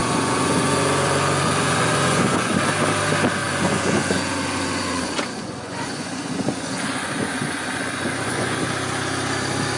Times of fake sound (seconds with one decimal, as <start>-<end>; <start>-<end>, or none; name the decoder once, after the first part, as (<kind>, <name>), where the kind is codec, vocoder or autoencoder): 0.0-2.5 (vocoder, Vocos); 3.4-8.6